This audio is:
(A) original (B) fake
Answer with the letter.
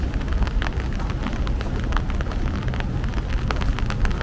A